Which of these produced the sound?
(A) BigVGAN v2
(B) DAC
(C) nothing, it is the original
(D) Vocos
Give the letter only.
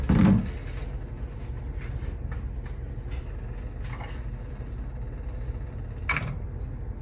C